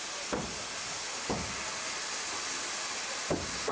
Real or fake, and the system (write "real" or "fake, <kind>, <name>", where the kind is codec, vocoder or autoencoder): real